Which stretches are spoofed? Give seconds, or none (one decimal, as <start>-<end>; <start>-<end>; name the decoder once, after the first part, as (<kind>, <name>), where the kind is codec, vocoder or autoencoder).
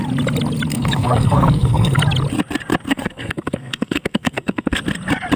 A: 0.7-2.0 (codec, SNAC); 2.9-4.8